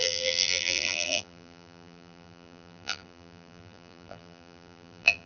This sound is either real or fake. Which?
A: fake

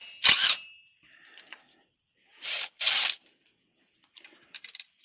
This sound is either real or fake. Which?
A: fake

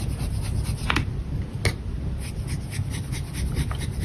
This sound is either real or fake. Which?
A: real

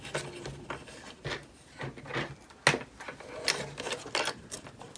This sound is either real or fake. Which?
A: real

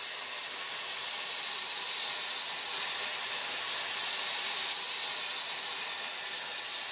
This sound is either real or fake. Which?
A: fake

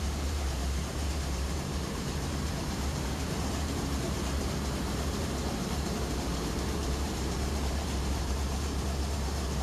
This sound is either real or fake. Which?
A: fake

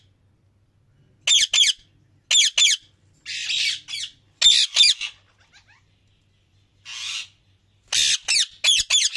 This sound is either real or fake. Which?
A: real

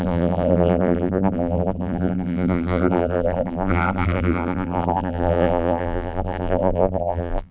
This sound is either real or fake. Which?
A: fake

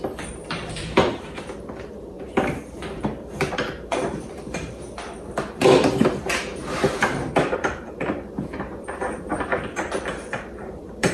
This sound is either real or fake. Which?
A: fake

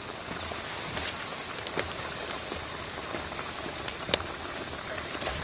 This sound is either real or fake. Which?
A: fake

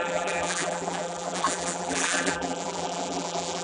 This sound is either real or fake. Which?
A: fake